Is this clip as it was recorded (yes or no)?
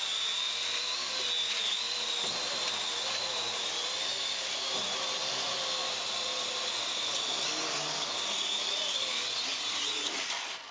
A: yes